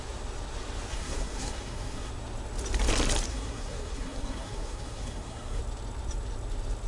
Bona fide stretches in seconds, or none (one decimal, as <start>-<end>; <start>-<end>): 0.0-0.9; 2.1-3.3; 5.6-6.9